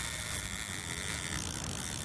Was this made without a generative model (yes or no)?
yes